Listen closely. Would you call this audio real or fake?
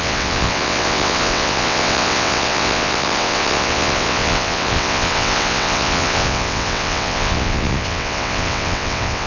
fake